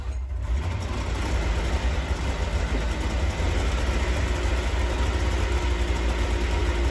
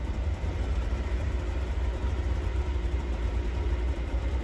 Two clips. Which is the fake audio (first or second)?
second